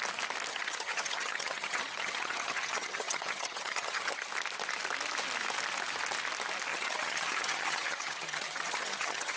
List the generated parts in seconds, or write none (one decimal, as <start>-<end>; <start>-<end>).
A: 0.5-4.3; 6.7-9.4